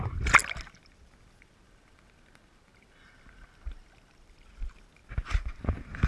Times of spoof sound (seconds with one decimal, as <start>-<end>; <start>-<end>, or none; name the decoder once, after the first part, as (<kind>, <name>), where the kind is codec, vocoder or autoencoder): none